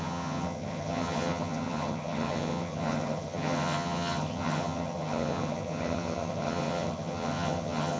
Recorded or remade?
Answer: remade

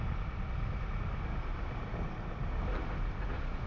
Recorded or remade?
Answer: recorded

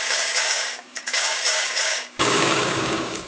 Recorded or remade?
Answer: remade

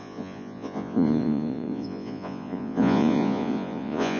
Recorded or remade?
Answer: remade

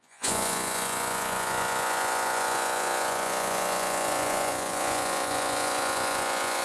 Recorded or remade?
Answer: remade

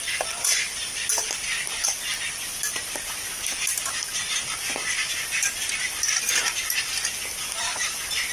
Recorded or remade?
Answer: recorded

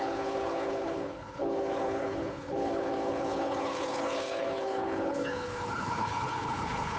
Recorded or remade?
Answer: remade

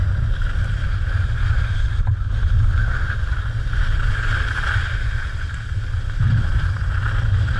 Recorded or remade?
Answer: recorded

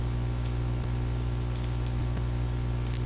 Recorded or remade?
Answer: recorded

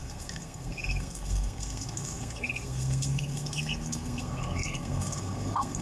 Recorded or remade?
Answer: remade